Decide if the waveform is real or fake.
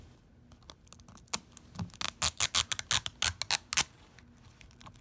real